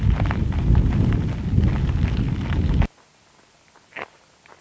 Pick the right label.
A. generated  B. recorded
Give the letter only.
B